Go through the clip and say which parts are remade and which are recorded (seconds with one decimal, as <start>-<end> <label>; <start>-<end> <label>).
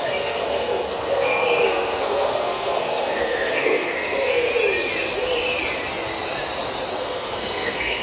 0.0-4.5 remade; 4.5-6.9 recorded; 6.9-8.0 remade